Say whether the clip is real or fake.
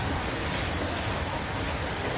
real